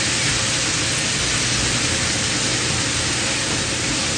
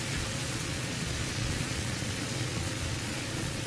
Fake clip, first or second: second